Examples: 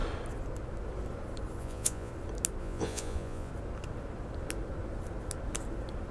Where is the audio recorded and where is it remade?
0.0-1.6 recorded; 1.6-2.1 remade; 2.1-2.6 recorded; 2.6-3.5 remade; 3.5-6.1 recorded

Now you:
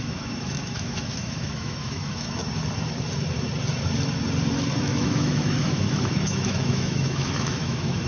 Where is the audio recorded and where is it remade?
0.0-2.4 remade; 2.4-4.8 recorded; 4.8-8.1 remade

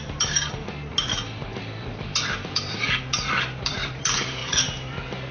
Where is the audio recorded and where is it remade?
0.0-0.9 remade; 0.9-1.4 recorded; 1.4-4.4 remade; 4.4-5.3 recorded

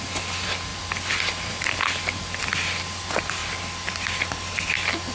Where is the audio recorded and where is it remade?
0.0-5.1 recorded

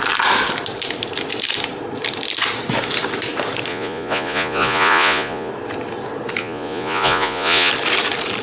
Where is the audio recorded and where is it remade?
0.0-3.7 recorded; 3.7-5.5 remade; 5.5-6.4 recorded; 6.4-7.7 remade; 7.7-8.4 recorded

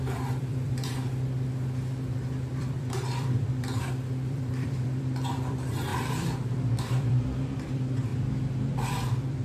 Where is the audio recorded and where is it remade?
0.0-0.9 remade; 0.9-2.5 recorded; 2.5-9.4 remade

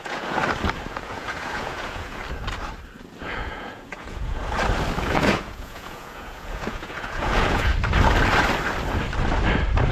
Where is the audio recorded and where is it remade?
0.0-0.4 remade; 0.4-0.9 recorded; 0.9-2.2 remade; 2.2-3.2 recorded; 3.2-4.4 remade; 4.4-5.0 recorded; 5.0-7.7 remade; 7.7-9.9 recorded

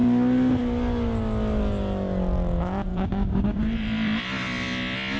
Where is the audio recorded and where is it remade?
0.0-2.9 recorded; 2.9-3.6 remade; 3.6-5.2 recorded